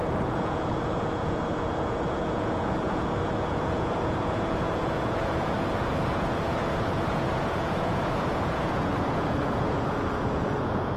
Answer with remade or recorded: remade